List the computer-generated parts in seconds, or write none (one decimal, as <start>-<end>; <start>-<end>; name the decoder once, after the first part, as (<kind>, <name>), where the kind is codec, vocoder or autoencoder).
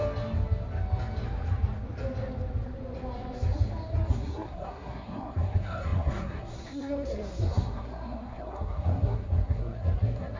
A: 4.1-10.4 (codec, SNAC)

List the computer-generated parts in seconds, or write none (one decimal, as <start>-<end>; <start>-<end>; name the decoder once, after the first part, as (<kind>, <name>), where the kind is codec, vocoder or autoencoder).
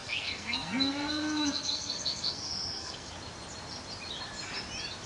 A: 0.0-3.1 (codec, SNAC)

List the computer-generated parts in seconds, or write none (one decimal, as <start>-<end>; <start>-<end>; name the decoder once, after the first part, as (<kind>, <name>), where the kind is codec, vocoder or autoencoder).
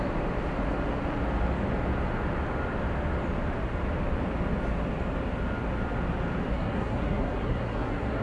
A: 6.5-8.2 (codec, SNAC)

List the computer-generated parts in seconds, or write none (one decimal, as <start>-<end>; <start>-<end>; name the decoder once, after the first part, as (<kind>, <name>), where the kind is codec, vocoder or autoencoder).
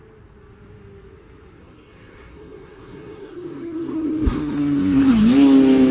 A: 1.6-5.1 (codec, SNAC)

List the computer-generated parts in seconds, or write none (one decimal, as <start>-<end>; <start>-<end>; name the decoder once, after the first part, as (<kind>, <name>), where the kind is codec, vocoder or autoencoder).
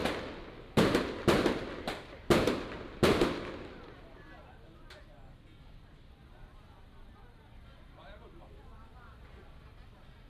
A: none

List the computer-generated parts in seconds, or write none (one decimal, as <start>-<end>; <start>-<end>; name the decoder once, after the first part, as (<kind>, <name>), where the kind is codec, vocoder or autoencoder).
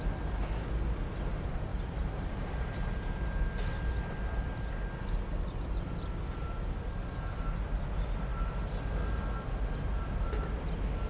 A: none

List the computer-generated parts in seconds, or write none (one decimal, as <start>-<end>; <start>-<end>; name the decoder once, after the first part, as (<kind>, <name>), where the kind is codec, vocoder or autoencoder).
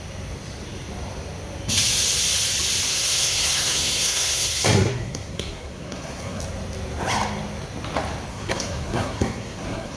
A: 2.9-6.4 (codec, SNAC); 8.3-10.0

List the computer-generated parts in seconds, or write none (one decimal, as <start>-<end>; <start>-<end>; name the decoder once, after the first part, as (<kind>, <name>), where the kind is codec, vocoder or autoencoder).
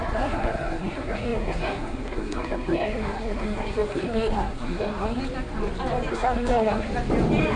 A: 0.0-5.2 (codec, SNAC); 6.1-6.9